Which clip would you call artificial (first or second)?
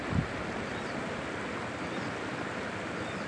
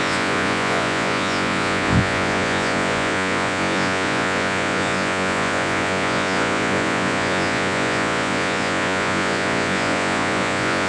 second